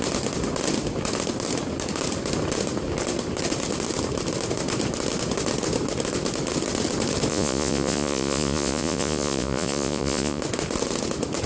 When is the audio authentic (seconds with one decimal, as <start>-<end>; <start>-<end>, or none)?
0.0-7.3; 10.4-11.5